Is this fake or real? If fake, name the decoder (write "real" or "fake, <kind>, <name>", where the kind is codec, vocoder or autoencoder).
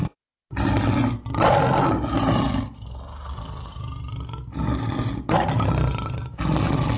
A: real